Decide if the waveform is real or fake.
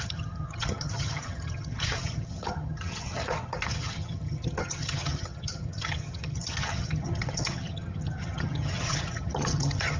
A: fake